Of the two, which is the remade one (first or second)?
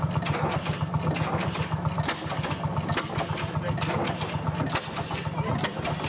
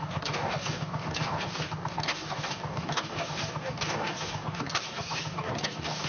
second